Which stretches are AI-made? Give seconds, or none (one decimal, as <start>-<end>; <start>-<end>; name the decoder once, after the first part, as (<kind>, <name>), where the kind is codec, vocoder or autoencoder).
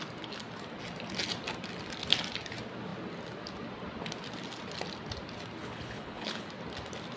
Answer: 5.6-6.5 (codec, HILCodec)